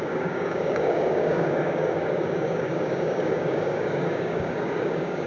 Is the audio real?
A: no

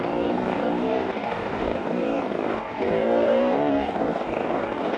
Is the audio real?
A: no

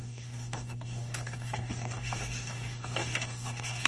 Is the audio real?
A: no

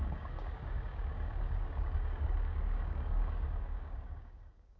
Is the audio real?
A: no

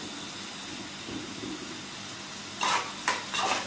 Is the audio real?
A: yes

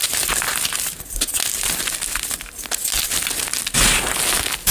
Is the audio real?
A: yes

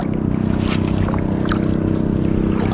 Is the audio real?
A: yes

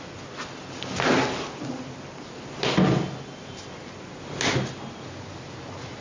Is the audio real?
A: yes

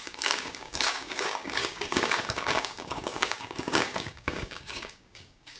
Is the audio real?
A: no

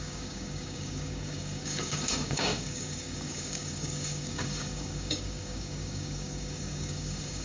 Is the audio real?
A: no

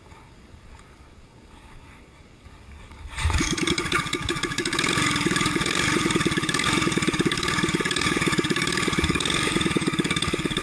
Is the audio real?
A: no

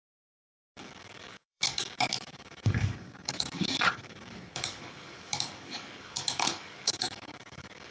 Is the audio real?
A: no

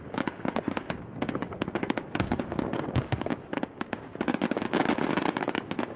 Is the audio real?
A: no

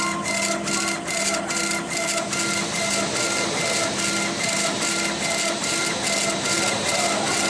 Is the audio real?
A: yes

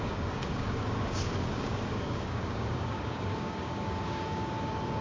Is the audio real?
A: no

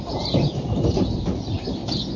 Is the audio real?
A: yes